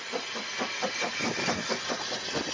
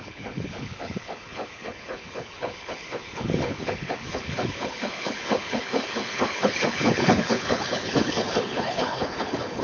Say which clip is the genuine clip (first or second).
first